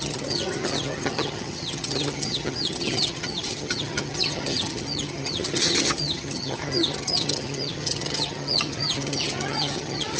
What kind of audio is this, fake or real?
fake